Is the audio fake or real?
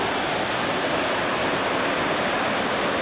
real